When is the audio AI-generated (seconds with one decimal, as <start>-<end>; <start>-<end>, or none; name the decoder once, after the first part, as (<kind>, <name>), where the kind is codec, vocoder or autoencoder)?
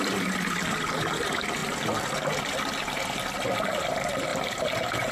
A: 4.3-5.1 (vocoder, BigVGAN v2)